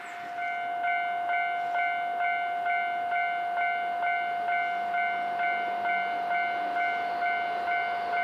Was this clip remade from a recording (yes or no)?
no